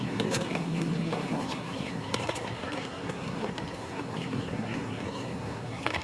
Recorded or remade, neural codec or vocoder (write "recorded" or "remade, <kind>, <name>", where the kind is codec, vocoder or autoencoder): remade, codec, SNAC